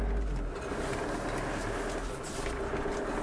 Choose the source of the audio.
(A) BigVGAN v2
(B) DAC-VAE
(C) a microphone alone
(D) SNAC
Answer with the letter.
C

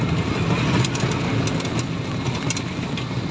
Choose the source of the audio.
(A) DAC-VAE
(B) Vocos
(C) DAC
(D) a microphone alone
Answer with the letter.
D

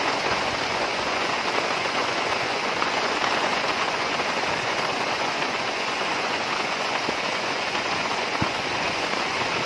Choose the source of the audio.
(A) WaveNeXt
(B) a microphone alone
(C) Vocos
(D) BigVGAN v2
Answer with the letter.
C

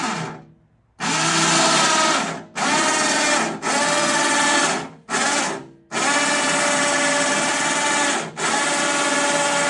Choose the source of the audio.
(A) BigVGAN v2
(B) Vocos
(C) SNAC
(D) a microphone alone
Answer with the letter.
D